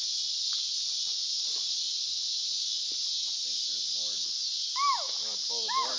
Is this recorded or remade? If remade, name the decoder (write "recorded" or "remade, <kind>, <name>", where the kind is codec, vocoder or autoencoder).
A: recorded